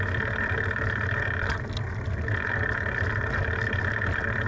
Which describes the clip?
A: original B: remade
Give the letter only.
A